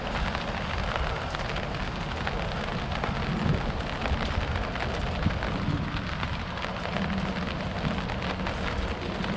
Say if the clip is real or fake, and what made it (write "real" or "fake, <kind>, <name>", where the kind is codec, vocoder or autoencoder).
real